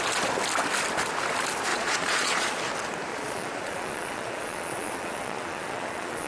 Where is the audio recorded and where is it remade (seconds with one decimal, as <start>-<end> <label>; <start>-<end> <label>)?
0.0-1.7 recorded; 1.7-2.6 remade; 2.6-3.1 recorded; 3.1-6.3 remade